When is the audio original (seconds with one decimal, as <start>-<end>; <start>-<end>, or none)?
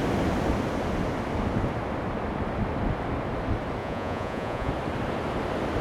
0.0-3.8; 4.7-5.8